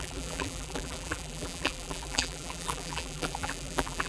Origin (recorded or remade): remade